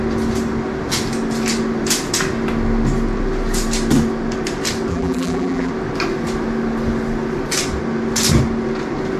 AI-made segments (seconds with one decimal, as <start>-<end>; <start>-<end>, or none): 4.9-5.7